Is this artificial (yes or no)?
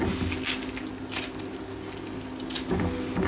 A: no